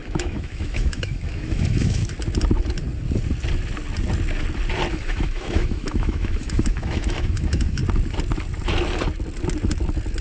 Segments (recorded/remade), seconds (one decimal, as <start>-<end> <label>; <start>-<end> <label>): 0.0-2.0 remade; 2.0-4.9 recorded; 4.9-7.8 remade; 7.8-10.2 recorded